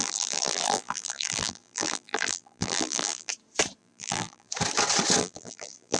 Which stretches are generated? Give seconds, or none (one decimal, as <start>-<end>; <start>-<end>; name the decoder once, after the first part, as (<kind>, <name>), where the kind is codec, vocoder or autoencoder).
0.0-3.3 (vocoder, BigVGAN v2); 3.8-4.5; 5.2-6.0